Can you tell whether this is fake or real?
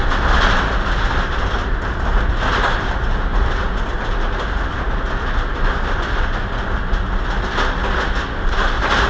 real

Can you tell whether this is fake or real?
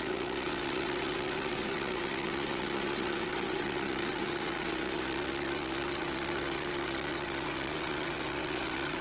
fake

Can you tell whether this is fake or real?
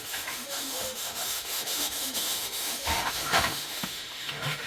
fake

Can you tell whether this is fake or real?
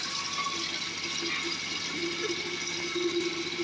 real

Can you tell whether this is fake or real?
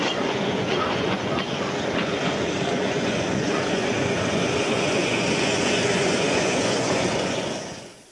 fake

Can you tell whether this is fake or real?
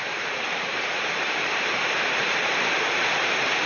fake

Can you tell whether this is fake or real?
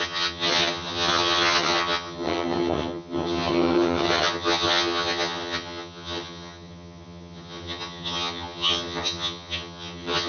fake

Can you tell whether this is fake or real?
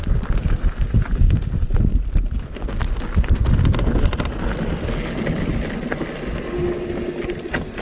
real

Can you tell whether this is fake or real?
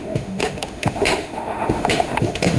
fake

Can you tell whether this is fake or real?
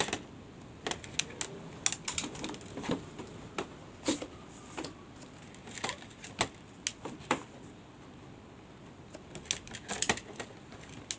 real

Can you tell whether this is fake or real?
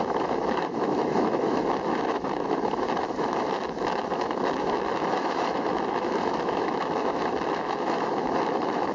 fake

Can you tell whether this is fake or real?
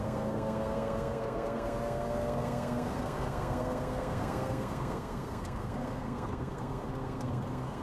fake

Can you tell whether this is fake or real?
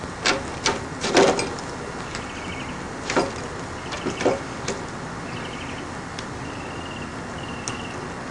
real